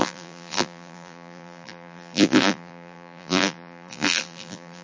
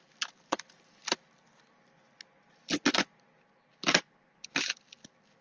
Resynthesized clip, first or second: first